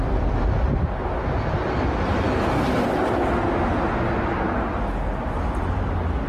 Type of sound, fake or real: real